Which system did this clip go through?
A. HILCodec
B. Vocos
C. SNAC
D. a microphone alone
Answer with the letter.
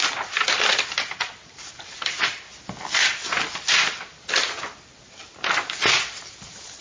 D